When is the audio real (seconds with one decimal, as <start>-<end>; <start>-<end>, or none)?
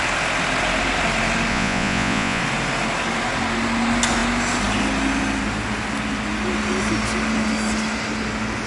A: 0.0-1.5; 2.4-8.7